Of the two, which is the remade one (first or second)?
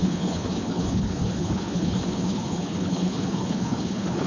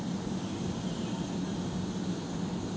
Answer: first